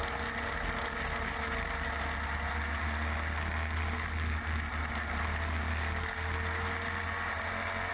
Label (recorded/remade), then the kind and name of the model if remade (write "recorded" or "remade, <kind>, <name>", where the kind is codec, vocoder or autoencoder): recorded